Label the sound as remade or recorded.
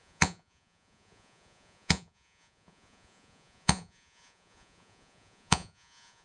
remade